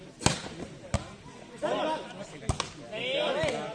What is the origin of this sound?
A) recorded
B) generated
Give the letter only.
A